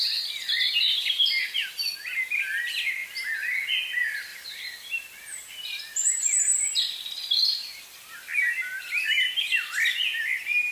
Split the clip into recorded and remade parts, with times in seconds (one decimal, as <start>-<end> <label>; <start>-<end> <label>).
0.0-0.6 recorded; 0.6-1.3 remade; 1.3-4.3 recorded; 4.3-8.8 remade; 8.8-10.7 recorded